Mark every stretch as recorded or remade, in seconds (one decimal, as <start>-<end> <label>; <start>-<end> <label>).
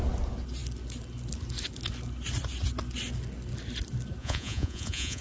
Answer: 0.0-4.2 recorded; 4.2-5.2 remade